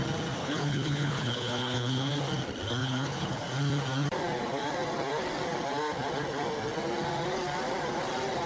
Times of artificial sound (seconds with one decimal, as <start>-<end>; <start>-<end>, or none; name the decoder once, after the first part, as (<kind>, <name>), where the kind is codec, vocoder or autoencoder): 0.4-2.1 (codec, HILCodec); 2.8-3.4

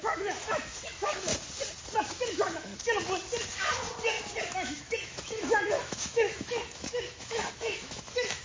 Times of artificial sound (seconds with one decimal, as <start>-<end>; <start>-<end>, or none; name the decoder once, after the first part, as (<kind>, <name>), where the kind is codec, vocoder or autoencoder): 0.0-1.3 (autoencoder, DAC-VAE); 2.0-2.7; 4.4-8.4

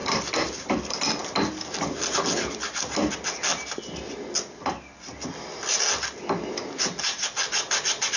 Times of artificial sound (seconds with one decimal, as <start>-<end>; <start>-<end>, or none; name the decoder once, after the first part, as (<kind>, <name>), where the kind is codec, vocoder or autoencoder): none

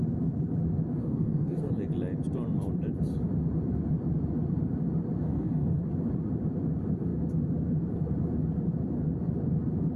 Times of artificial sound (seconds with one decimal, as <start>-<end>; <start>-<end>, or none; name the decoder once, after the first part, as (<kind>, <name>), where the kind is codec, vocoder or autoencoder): 1.0-1.7 (codec, DAC); 5.2-5.8

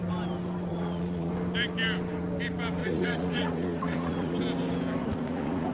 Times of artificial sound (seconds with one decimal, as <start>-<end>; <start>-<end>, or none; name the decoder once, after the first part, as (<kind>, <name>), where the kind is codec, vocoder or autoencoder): 0.7-1.3 (vocoder, Vocos); 2.8-4.4; 5.0-5.7

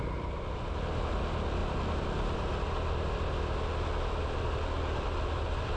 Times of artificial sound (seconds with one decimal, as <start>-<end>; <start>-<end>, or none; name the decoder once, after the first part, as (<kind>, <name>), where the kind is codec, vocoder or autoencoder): none